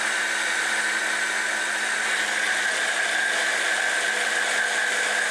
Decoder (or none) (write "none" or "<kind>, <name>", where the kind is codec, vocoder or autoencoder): none